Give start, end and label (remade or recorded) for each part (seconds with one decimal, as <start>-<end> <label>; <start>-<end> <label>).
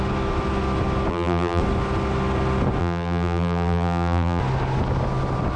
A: 0.0-1.1 recorded; 1.1-1.6 remade; 1.6-2.8 recorded; 2.8-4.4 remade; 4.4-5.6 recorded